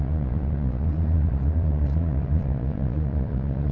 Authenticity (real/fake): fake